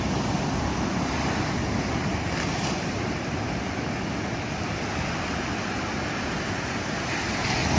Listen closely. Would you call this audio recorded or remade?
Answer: recorded